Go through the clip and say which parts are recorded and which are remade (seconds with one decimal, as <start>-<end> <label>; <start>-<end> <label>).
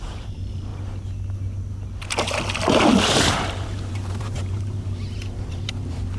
0.0-0.7 remade; 0.7-3.1 recorded; 3.1-6.2 remade